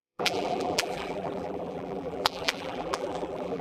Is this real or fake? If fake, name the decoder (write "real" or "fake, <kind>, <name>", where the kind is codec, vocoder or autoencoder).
fake, vocoder, BigVGAN v2